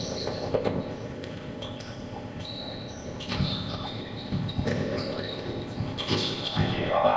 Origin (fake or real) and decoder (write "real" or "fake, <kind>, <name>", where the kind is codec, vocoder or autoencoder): fake, codec, ZipCodec